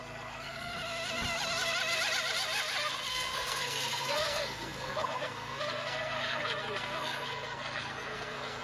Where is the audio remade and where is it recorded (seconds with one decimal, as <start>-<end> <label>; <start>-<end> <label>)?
0.0-0.7 remade; 0.7-3.1 recorded; 3.1-8.6 remade